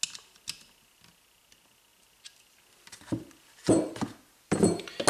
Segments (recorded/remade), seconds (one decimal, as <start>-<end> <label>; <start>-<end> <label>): 0.0-5.1 recorded